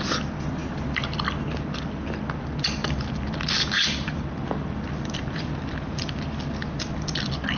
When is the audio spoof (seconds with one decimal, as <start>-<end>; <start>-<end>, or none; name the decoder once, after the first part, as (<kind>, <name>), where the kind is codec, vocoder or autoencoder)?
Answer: 2.8-7.6 (vocoder, BigVGAN v2)

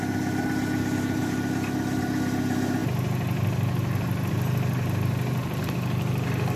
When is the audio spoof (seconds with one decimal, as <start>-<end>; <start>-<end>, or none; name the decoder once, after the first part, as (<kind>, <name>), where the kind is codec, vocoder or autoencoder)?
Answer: none

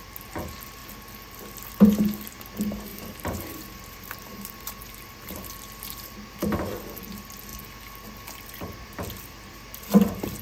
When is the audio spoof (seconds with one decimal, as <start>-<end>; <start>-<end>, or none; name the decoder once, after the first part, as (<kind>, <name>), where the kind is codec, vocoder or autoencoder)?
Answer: 2.9-5.5 (vocoder, BigVGAN v2)

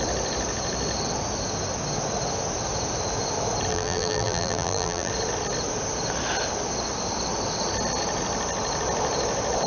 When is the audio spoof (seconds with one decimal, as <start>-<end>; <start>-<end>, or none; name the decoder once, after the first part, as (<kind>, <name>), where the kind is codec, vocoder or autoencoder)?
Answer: 3.7-5.1 (vocoder, BigVGAN v2)